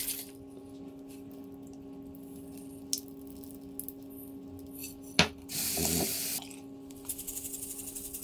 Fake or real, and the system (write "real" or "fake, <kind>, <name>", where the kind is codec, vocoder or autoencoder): real